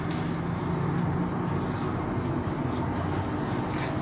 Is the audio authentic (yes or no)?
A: yes